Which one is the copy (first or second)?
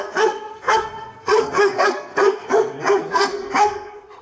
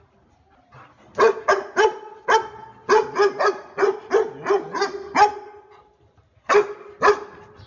first